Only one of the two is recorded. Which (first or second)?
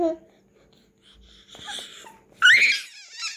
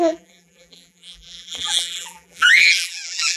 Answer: first